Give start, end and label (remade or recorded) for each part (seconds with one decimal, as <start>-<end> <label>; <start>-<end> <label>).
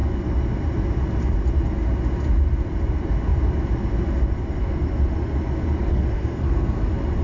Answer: 0.0-5.9 recorded; 5.9-6.8 remade; 6.8-7.2 recorded